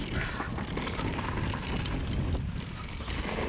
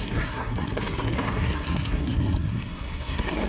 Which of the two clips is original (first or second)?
first